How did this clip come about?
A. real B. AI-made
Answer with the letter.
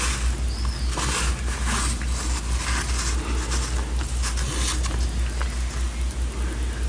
A